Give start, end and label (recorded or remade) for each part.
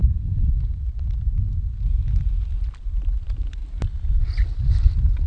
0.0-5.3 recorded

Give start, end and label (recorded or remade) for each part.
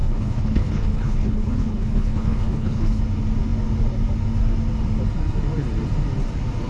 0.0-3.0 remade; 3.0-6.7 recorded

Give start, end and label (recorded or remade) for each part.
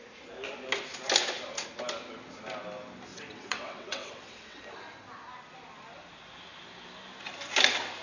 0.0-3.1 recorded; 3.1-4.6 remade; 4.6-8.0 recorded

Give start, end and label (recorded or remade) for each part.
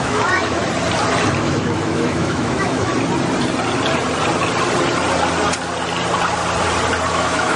0.0-0.6 remade; 0.6-1.4 recorded; 1.4-2.9 remade; 2.9-7.1 recorded; 7.1-7.6 remade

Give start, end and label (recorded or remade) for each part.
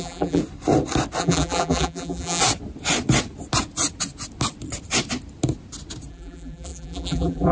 0.0-0.4 remade; 0.4-1.2 recorded; 1.2-2.4 remade; 2.4-6.1 recorded; 6.1-7.5 remade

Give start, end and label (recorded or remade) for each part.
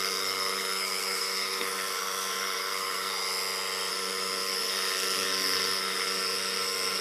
0.0-3.1 remade; 3.1-3.9 recorded; 3.9-7.0 remade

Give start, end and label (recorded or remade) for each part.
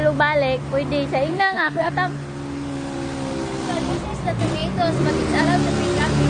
0.0-1.3 recorded; 1.3-1.9 remade; 1.9-6.3 recorded